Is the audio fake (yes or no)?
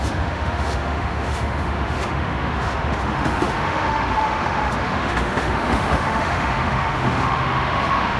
yes